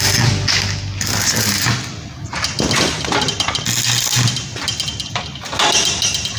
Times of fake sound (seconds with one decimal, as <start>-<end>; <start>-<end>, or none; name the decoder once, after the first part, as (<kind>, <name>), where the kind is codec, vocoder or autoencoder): 4.5-5.3 (vocoder, BigVGAN v2)